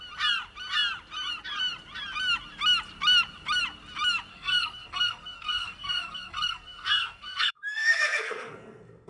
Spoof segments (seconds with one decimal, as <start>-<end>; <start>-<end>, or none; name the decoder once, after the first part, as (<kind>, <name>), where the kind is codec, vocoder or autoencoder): 4.3-9.1 (codec, SNAC)

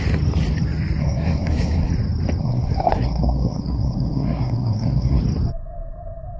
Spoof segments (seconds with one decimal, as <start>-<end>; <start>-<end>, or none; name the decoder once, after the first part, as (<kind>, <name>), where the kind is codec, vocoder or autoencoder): 1.0-1.9 (codec, SNAC); 2.4-5.2

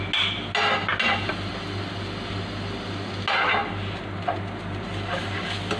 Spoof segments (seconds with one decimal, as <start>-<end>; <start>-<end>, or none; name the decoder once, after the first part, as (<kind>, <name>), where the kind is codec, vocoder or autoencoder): none